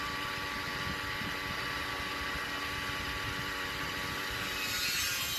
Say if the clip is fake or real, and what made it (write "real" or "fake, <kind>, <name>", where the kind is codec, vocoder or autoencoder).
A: real